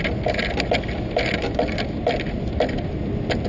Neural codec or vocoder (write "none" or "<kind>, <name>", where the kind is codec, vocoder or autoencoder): none